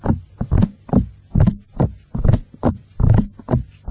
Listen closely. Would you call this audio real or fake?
real